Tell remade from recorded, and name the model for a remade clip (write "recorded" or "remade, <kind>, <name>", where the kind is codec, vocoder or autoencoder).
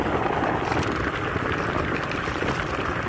remade, vocoder, BigVGAN v2